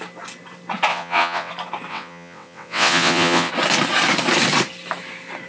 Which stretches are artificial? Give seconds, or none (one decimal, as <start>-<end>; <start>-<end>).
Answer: 0.9-1.5; 1.9-3.5